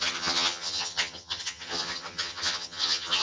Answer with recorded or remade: remade